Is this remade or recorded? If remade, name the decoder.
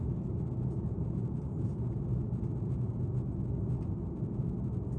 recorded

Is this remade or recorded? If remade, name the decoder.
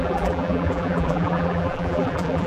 remade, vocoder, BigVGAN v2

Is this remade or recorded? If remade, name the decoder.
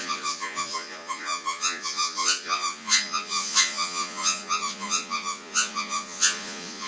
remade, vocoder, Vocos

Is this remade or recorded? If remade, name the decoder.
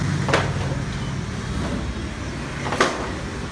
recorded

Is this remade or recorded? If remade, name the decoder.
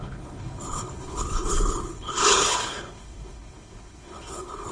remade, codec, HILCodec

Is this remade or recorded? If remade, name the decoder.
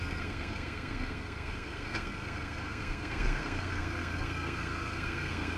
remade, codec, SNAC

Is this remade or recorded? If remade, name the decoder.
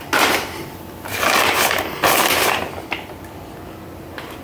recorded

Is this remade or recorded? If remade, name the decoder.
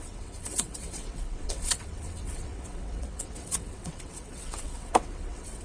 remade, vocoder, WaveNeXt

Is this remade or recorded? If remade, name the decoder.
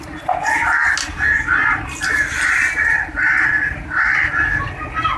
recorded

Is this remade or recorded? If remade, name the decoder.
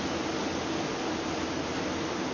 recorded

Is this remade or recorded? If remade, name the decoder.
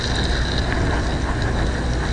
recorded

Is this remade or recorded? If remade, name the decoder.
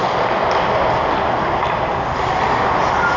recorded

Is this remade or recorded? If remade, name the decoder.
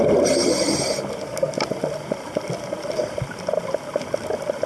recorded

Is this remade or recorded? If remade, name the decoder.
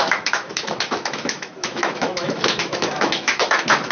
remade, autoencoder, DAC-VAE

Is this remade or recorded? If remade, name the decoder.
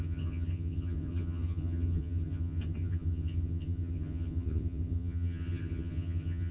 remade, vocoder, HiFi-GAN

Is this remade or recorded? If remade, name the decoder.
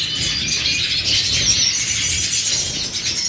recorded